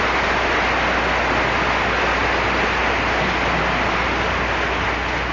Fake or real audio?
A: real